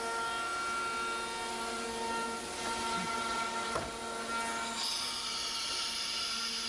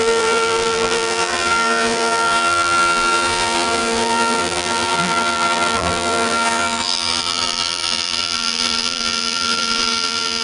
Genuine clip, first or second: first